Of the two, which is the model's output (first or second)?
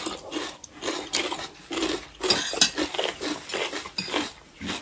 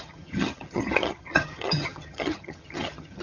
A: second